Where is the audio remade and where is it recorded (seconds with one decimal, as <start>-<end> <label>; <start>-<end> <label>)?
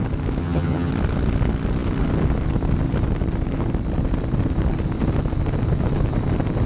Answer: 0.0-0.4 recorded; 0.4-0.9 remade; 0.9-6.7 recorded